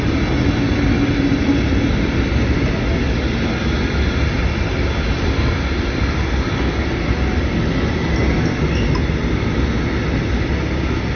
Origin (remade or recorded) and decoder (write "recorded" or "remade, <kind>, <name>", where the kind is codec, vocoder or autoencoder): recorded